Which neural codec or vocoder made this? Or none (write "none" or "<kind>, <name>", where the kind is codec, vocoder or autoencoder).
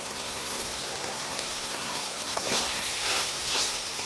codec, SNAC